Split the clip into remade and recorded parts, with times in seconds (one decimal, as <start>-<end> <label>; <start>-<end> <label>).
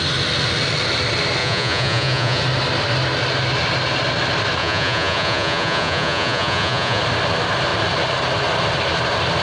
0.0-1.4 recorded; 1.4-2.4 remade; 2.4-4.6 recorded; 4.6-7.0 remade; 7.0-9.4 recorded